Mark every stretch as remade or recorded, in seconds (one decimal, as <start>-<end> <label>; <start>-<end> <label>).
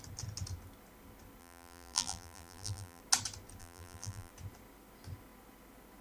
0.0-1.4 recorded; 1.4-3.0 remade; 3.0-3.6 recorded; 3.6-4.3 remade; 4.3-6.0 recorded